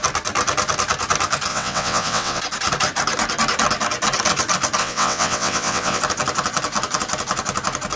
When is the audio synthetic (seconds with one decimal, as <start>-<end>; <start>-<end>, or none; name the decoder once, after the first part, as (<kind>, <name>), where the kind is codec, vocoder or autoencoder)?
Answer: 1.5-2.4 (vocoder, WaveNeXt); 4.8-6.0